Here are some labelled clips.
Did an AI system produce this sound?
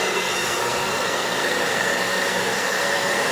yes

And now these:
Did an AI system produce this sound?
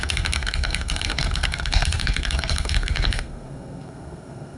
yes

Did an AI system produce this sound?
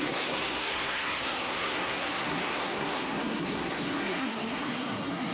yes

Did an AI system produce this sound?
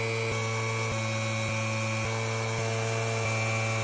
no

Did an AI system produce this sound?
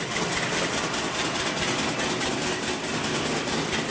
no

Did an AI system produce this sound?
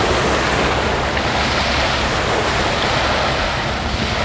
no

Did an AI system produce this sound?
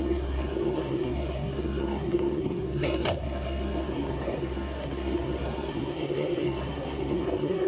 yes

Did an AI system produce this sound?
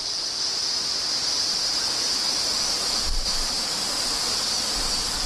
no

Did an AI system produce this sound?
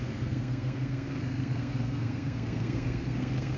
yes